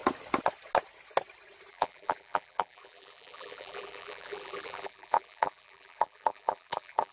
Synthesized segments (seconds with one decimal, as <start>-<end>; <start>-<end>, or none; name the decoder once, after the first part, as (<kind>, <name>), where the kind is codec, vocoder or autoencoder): 1.7-7.1 (vocoder, BigVGAN v2)